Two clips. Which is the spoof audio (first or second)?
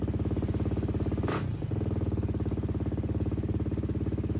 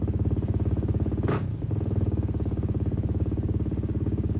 second